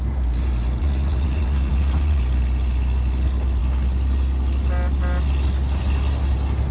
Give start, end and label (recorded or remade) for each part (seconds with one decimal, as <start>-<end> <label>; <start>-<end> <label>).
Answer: 0.0-0.8 recorded; 0.8-2.2 remade; 2.2-6.7 recorded